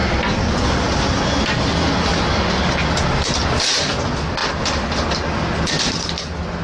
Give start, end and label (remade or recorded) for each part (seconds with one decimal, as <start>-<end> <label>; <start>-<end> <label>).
0.0-6.6 recorded